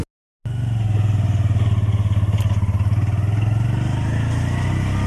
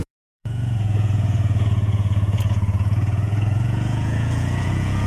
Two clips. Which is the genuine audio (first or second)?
first